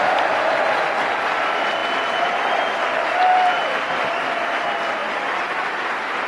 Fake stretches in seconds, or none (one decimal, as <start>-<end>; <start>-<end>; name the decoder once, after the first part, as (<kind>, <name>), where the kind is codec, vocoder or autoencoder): 0.0-6.3 (vocoder, BigVGAN v2)